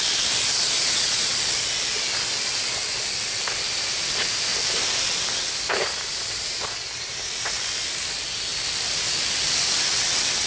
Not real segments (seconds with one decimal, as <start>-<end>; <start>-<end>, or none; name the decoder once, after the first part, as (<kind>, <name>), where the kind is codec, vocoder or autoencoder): 0.8-1.3 (vocoder, Vocos)